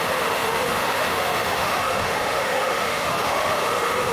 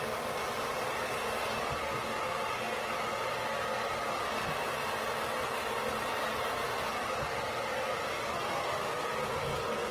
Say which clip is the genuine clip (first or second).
second